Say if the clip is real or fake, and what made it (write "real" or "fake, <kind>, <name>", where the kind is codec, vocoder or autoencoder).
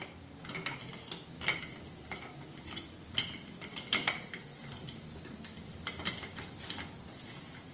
real